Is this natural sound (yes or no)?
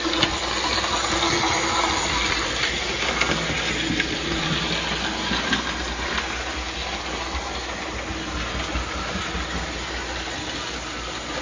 yes